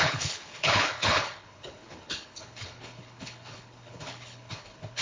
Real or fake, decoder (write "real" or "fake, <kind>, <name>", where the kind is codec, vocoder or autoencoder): fake, codec, HILCodec